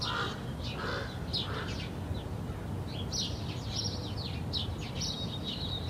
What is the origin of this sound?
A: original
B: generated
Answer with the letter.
A